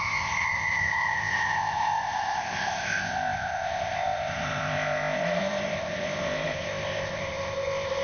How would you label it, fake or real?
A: fake